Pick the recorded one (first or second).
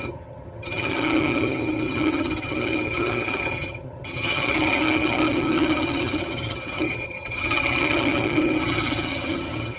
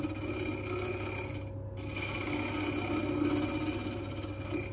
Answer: second